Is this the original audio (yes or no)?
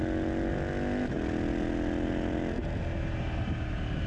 yes